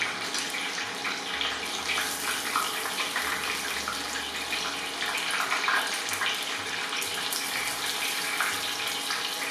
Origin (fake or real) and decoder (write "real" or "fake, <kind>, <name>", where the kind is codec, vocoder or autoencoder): real